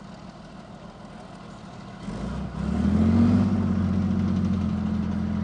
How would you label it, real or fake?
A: real